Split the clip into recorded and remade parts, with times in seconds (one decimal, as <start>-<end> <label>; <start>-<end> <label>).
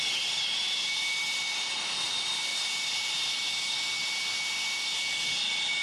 0.0-5.8 recorded